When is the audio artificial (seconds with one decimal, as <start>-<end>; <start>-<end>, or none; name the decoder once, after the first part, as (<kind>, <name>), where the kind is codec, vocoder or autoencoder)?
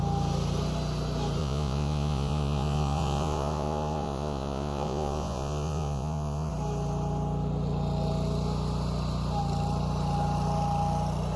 1.4-6.5 (vocoder, Vocos)